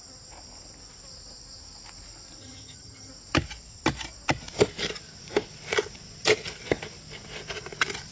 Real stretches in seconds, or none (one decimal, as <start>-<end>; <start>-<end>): 0.0-2.4; 3.1-8.1